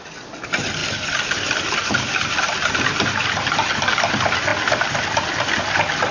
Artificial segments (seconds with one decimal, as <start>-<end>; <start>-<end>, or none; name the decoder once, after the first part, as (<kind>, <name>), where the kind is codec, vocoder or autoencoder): none